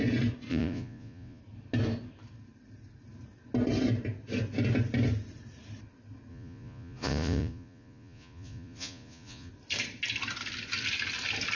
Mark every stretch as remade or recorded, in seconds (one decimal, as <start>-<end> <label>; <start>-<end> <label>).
0.0-0.5 recorded; 0.5-1.4 remade; 1.4-6.3 recorded; 6.3-9.5 remade; 9.5-11.6 recorded